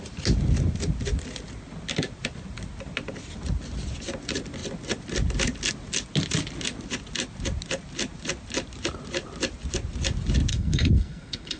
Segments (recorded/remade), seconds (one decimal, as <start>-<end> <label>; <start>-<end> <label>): 0.0-10.5 recorded; 10.5-11.6 remade